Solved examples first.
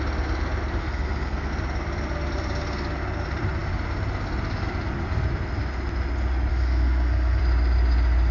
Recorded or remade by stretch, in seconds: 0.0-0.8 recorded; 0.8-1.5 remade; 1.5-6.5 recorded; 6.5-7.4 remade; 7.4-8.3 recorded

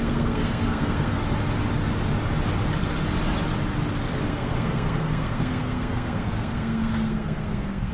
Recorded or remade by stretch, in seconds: 0.0-1.2 remade; 1.2-4.2 recorded; 4.2-7.9 remade

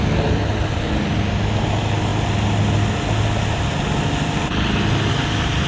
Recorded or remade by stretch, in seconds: 0.0-5.7 recorded

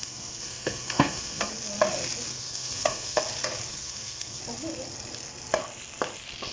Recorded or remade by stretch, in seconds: 0.0-1.5 remade; 1.5-2.3 recorded; 2.3-3.2 remade; 3.2-3.7 recorded; 3.7-4.4 remade; 4.4-6.5 recorded

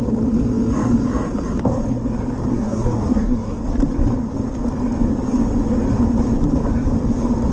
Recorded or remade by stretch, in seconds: 0.0-2.5 recorded; 2.5-3.6 remade; 3.6-7.5 recorded

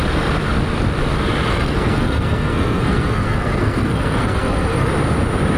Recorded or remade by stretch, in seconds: 0.0-1.5 recorded; 1.5-4.9 remade; 4.9-5.6 recorded

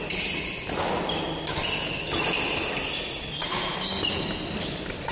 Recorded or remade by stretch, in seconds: 0.0-5.1 recorded